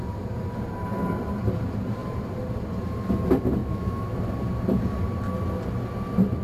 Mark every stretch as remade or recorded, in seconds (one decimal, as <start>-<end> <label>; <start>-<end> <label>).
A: 0.0-3.6 recorded; 3.6-4.2 remade; 4.2-6.4 recorded